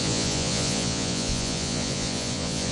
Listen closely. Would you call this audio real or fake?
fake